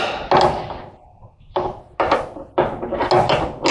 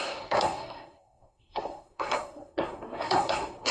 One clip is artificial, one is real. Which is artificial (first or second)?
second